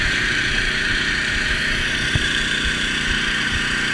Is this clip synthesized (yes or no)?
yes